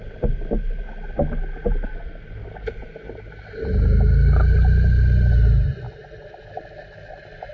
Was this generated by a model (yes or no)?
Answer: no